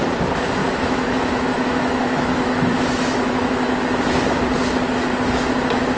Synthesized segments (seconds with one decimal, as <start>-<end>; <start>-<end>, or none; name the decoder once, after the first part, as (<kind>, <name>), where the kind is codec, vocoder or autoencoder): 0.6-3.8 (autoencoder, DAC-VAE)